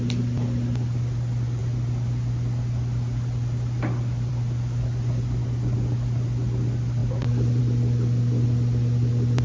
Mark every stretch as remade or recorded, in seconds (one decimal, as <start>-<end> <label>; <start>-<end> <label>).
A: 0.0-9.4 recorded